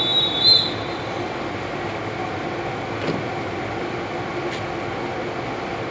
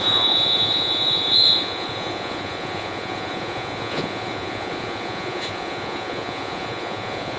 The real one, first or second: first